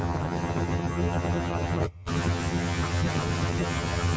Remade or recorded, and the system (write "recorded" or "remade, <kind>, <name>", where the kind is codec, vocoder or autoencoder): remade, vocoder, HiFi-GAN